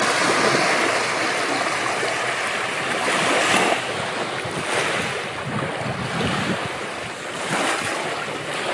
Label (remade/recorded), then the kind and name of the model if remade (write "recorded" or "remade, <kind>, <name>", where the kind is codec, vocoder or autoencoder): recorded